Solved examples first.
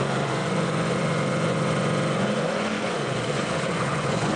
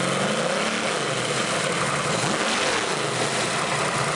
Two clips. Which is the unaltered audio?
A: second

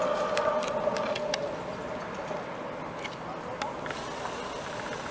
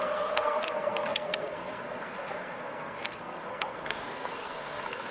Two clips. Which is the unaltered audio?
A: first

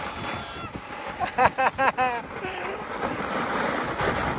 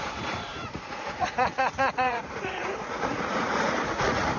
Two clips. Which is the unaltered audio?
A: first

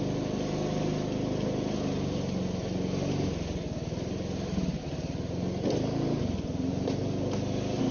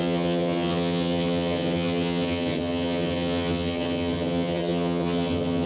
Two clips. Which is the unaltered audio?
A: first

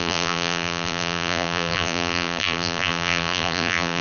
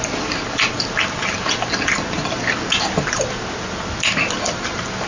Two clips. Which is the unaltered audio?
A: second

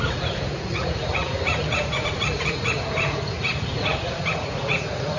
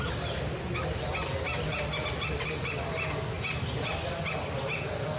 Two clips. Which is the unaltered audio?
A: second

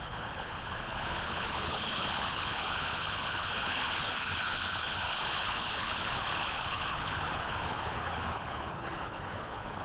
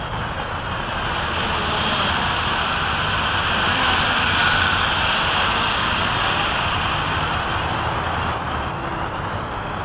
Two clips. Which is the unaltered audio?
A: second